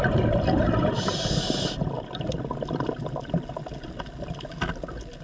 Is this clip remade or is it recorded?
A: recorded